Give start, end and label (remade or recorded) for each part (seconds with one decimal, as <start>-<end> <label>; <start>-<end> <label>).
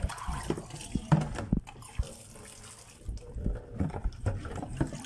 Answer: 0.0-5.1 recorded